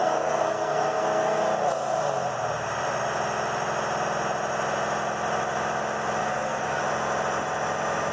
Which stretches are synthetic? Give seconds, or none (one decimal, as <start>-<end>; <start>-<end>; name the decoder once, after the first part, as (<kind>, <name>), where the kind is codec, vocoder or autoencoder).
0.0-1.4 (codec, SNAC); 6.2-6.8